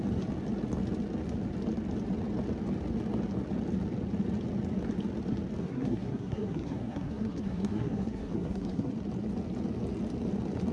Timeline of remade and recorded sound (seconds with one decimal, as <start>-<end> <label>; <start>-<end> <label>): 0.0-5.6 recorded; 5.6-8.9 remade; 8.9-10.7 recorded

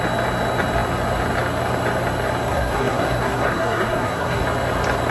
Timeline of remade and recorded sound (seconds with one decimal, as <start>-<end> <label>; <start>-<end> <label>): 0.0-2.4 recorded; 2.4-4.4 remade; 4.4-5.1 recorded

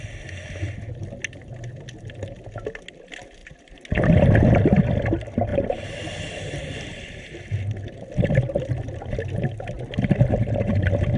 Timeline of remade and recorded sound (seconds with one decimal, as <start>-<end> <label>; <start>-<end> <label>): 0.0-11.2 recorded

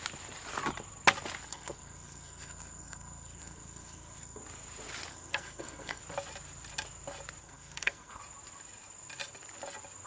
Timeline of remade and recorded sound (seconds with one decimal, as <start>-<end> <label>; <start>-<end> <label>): 0.0-1.5 recorded; 1.5-4.4 remade; 4.4-5.1 recorded; 5.1-6.0 remade; 6.0-7.4 recorded; 7.4-8.2 remade; 8.2-10.1 recorded

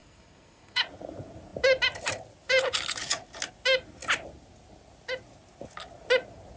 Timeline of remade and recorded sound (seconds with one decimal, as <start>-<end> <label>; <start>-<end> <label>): 0.0-0.8 remade; 0.8-6.6 recorded